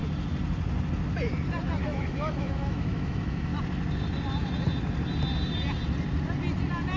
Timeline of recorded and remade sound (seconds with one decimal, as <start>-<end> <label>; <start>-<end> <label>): 0.0-1.8 recorded; 1.8-3.5 remade; 3.5-7.0 recorded